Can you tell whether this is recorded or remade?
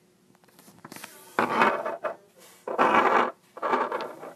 recorded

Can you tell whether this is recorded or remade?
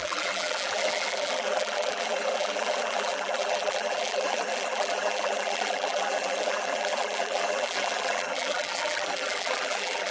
remade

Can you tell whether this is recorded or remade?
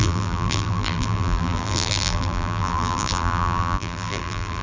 remade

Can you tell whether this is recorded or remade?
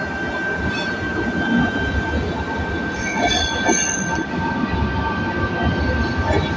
recorded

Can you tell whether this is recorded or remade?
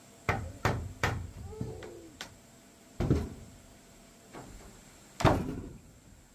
remade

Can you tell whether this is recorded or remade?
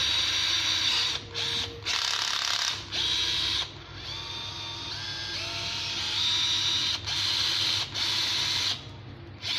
recorded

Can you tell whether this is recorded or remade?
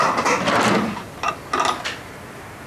recorded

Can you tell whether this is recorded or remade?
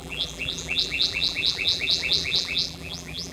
remade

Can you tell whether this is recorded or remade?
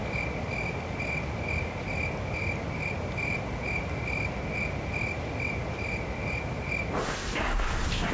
recorded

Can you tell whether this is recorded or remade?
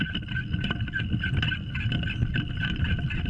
recorded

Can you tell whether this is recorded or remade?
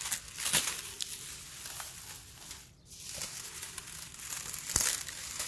recorded